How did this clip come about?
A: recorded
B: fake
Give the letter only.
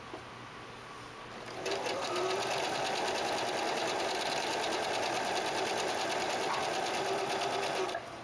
A